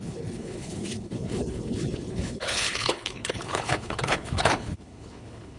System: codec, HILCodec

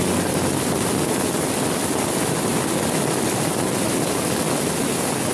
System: none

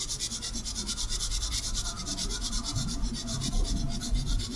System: none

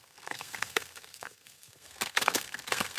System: codec, SNAC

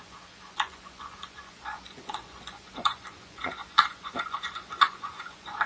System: vocoder, Vocos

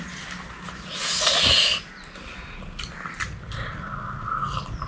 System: none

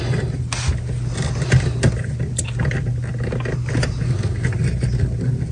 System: none